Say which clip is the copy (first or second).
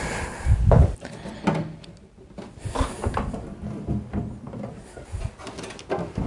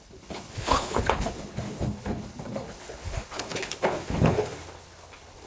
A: second